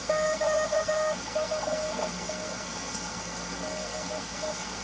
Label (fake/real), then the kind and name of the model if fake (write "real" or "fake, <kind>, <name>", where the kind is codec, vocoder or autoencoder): fake, codec, SNAC